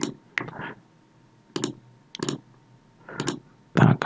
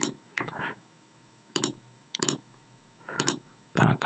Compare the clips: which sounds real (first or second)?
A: first